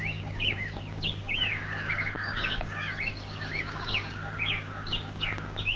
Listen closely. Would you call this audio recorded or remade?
remade